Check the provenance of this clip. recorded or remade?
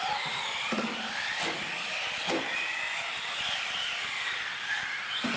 recorded